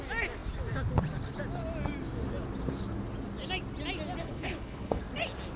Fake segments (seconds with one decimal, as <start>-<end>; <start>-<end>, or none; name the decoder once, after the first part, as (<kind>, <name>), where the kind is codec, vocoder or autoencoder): 4.2-5.0 (codec, HILCodec)